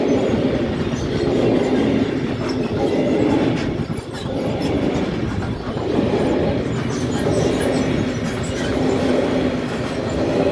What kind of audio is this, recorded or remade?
recorded